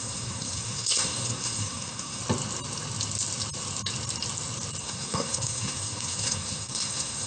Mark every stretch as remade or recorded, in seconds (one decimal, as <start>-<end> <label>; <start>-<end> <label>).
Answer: 0.0-2.2 remade; 2.2-4.8 recorded; 4.8-7.3 remade